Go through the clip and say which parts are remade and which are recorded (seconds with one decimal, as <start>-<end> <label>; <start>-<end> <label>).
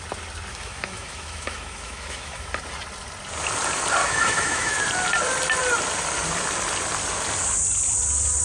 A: 0.0-0.5 recorded; 0.5-2.5 remade; 2.5-4.0 recorded; 4.0-4.8 remade; 4.8-8.4 recorded